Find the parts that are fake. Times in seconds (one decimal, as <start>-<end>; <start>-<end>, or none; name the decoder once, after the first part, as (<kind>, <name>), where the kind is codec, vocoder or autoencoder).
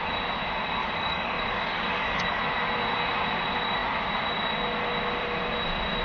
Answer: 0.8-2.4 (codec, DAC)